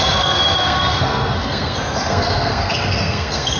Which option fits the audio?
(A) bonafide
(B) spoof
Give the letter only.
B